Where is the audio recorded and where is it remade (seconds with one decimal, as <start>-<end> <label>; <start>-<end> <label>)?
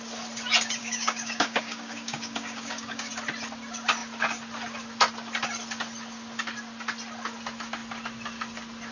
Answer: 0.0-0.8 recorded; 0.8-3.1 remade; 3.1-8.9 recorded